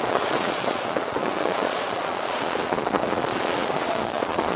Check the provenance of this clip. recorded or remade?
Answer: remade